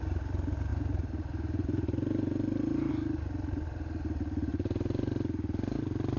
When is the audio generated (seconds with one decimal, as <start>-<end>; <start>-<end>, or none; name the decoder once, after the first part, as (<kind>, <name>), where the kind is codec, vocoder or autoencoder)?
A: 0.7-2.9 (vocoder, BigVGAN v2); 4.5-5.1